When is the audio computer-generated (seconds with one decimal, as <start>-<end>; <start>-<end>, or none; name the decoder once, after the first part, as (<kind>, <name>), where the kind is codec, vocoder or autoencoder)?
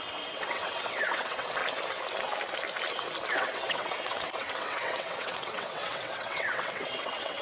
0.0-1.6 (vocoder, WaveNeXt); 3.3-7.4